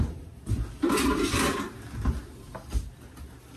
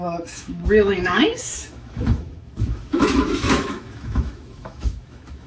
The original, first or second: first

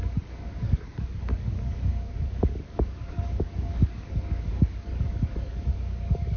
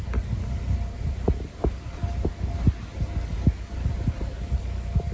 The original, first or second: second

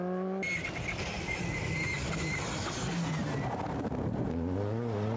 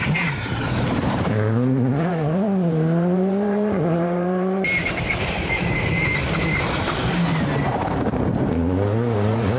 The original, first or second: first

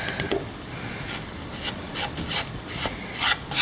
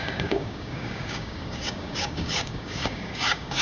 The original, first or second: first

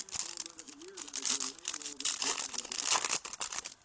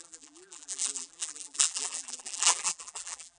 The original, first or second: first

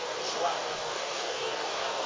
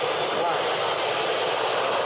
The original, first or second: second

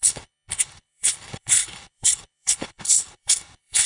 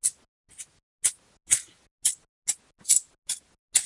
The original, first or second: second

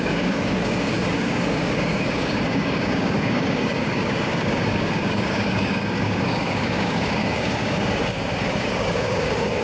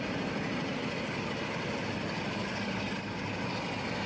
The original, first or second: second